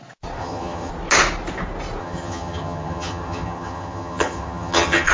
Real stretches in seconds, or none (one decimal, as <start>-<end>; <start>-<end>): 0.0-0.4; 0.9-2.0